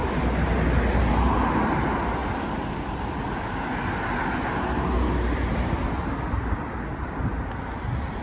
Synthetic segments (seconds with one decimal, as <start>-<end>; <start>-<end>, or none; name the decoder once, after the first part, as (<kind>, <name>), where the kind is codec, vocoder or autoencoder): none

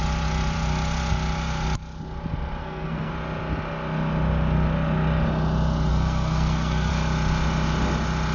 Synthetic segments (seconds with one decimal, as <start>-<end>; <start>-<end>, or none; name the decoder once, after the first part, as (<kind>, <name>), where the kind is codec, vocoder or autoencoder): 2.6-3.1 (codec, SNAC); 5.9-6.9

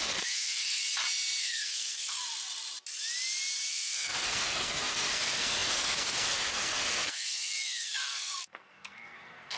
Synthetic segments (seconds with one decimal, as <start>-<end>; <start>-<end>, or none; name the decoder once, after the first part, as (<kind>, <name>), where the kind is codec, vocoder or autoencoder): 0.0-0.8 (codec, SNAC); 1.4-2.2; 3.7-9.6

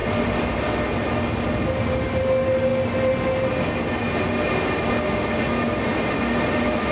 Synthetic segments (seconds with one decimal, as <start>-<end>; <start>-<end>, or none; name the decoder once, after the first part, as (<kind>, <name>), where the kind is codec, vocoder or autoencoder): none